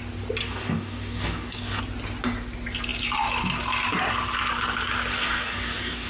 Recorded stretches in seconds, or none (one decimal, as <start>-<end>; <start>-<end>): 0.0-0.4; 1.8-5.1